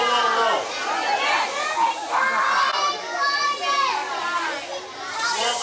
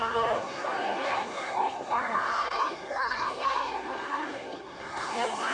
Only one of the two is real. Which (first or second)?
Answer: first